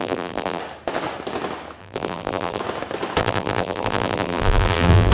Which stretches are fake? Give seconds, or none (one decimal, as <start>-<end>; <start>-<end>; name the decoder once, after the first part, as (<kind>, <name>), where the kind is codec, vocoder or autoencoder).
0.0-0.6 (vocoder, BigVGAN v2); 1.8-2.6; 3.2-5.1